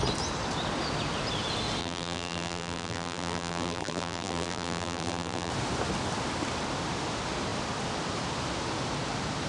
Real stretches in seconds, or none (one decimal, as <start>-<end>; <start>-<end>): 0.0-1.8; 5.5-9.5